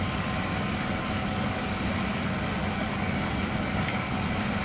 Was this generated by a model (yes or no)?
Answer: yes